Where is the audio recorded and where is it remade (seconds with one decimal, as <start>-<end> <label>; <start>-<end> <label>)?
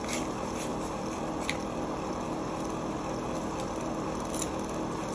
0.0-0.7 recorded; 0.7-2.1 remade; 2.1-5.1 recorded